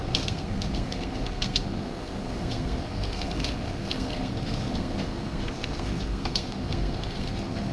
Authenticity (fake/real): fake